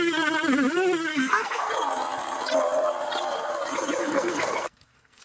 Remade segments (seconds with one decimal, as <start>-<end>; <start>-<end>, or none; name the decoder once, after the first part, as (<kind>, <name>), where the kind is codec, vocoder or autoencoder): 1.1-1.7 (codec, SNAC); 4.0-5.2